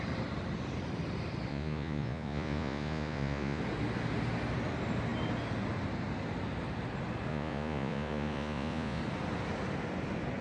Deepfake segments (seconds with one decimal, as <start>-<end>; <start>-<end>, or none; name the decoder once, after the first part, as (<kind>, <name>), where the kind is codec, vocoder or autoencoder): 1.5-3.6 (vocoder, Vocos); 7.3-9.0